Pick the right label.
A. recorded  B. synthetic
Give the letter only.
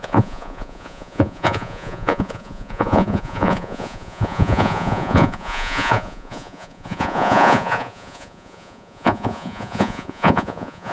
B